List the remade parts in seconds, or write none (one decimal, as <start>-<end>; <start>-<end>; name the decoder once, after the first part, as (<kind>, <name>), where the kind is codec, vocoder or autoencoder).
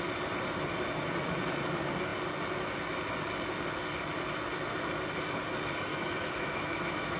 5.9-7.2 (autoencoder, DAC-VAE)